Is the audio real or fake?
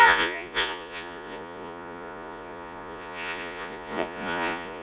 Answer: fake